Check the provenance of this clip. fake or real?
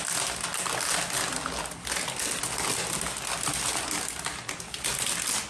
real